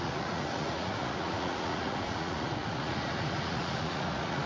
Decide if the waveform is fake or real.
fake